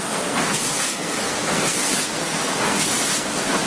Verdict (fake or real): fake